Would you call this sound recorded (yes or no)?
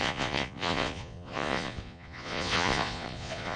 no